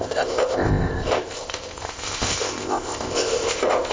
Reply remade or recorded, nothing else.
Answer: remade